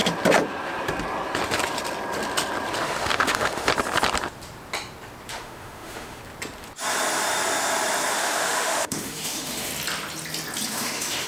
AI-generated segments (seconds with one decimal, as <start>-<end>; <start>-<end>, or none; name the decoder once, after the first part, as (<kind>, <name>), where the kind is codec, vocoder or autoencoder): 2.8-3.7 (autoencoder, DAC-VAE); 5.3-6.2; 8.1-9.7; 10.7-11.3